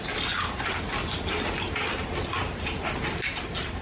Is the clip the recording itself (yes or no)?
yes